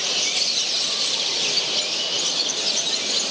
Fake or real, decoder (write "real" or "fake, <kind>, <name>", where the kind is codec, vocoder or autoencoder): real